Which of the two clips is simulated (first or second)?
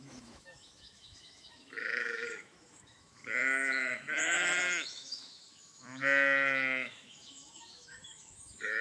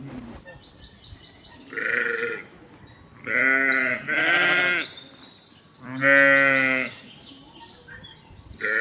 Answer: first